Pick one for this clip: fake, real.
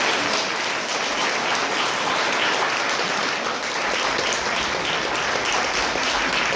real